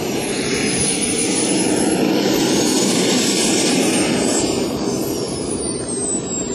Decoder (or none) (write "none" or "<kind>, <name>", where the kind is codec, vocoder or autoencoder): vocoder, BigVGAN v2